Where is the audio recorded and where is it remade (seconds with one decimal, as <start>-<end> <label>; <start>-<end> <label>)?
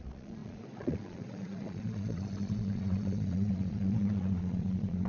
0.0-5.1 remade